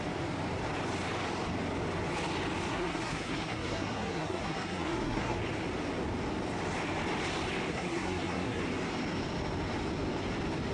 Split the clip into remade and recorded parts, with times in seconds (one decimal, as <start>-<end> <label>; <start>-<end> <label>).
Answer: 0.0-2.7 recorded; 2.7-5.4 remade; 5.4-7.7 recorded; 7.7-8.6 remade; 8.6-10.7 recorded

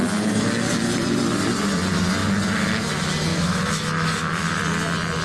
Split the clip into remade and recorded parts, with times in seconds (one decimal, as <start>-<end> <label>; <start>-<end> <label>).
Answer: 0.0-3.3 recorded; 3.3-4.6 remade; 4.6-5.2 recorded

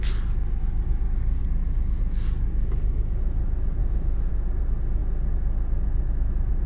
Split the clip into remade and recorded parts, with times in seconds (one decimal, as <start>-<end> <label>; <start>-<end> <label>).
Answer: 0.0-3.8 recorded; 3.8-4.3 remade; 4.3-6.7 recorded

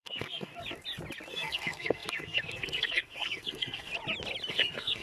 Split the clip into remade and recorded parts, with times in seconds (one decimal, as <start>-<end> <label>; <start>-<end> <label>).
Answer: 0.0-0.5 remade; 0.5-1.3 recorded; 1.3-3.9 remade; 3.9-4.5 recorded; 4.5-5.0 remade

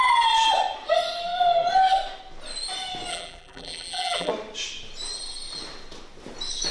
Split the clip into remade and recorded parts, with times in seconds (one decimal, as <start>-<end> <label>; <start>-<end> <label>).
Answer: 0.0-3.1 recorded; 3.1-4.3 remade; 4.3-6.7 recorded

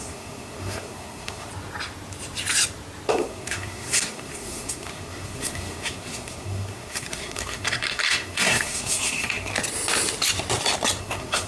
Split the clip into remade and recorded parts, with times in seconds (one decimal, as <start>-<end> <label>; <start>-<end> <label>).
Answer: 0.0-1.5 remade; 1.5-3.1 recorded; 3.1-9.5 remade; 9.5-11.0 recorded; 11.0-11.5 remade

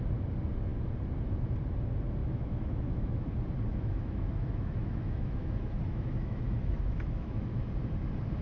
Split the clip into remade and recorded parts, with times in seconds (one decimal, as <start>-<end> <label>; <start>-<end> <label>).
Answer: 0.0-2.2 recorded; 2.2-3.3 remade; 3.3-3.7 recorded; 3.7-7.7 remade; 7.7-8.4 recorded

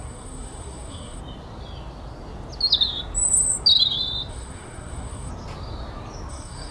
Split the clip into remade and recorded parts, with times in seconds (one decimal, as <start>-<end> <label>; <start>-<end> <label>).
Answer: 0.0-1.2 remade; 1.2-4.3 recorded; 4.3-5.3 remade; 5.3-6.3 recorded; 6.3-6.7 remade